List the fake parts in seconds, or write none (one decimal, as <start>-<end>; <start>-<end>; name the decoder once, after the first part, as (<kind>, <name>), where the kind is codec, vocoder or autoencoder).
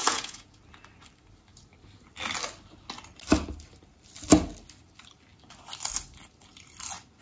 0.0-0.6 (vocoder, Vocos)